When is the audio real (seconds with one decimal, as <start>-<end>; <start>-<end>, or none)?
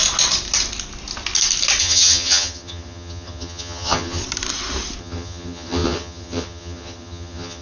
0.0-1.8; 4.2-5.0